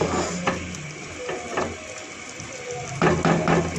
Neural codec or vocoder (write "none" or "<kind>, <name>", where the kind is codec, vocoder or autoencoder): none